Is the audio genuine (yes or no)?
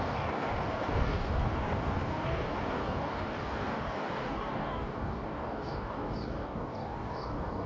no